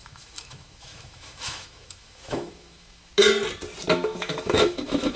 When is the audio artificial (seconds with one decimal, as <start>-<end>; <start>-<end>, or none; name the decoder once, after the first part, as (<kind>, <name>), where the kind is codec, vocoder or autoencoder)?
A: 0.0-3.1 (autoencoder, DAC-VAE); 3.9-5.2